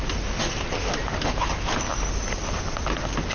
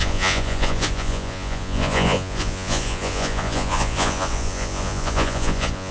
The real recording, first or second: first